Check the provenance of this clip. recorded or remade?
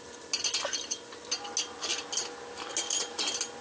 recorded